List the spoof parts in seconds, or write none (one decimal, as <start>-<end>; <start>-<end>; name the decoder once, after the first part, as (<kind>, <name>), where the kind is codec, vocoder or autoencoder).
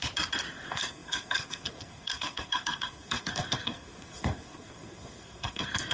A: 0.5-5.9 (codec, SNAC)